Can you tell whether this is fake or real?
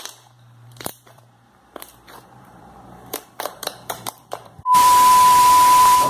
fake